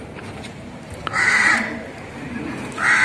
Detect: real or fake fake